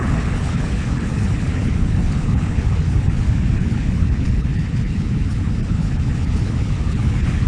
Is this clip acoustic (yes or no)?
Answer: no